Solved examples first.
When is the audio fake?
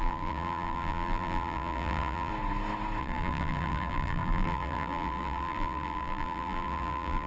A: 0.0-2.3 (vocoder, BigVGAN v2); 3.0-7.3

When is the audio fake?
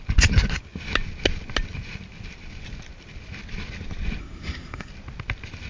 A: 4.2-4.9 (codec, SNAC)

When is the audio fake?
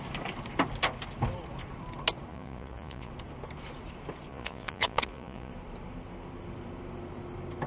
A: 2.3-3.1 (vocoder, Vocos); 4.3-5.5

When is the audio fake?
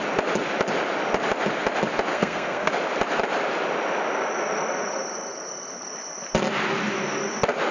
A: 2.1-2.7 (codec, SNAC)